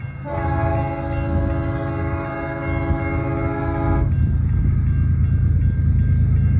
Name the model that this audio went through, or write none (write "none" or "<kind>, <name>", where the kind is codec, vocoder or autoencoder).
none